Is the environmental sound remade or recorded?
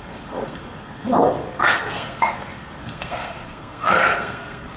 remade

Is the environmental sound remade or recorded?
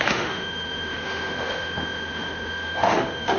remade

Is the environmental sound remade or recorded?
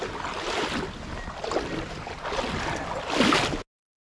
recorded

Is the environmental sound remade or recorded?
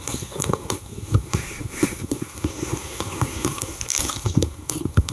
remade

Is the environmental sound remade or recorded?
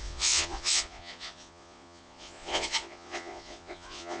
remade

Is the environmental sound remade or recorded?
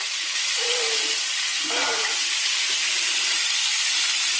recorded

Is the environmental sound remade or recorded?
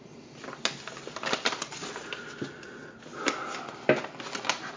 recorded